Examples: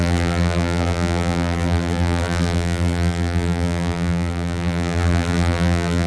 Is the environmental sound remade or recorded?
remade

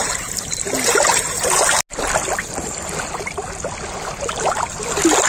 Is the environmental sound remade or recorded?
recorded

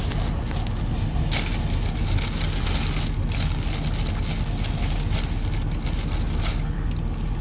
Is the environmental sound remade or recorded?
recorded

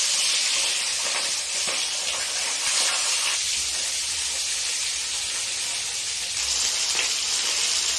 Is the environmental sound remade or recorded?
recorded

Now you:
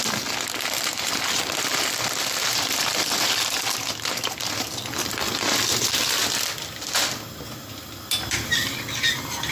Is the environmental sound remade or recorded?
recorded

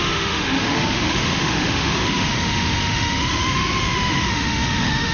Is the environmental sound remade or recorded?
remade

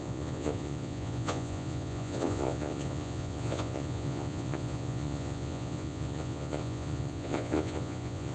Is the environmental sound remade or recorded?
remade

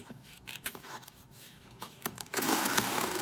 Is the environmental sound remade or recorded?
remade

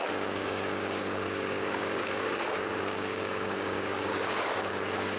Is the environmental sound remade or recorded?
remade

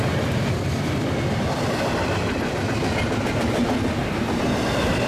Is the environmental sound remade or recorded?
remade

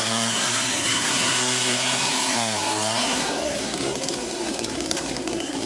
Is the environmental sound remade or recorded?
remade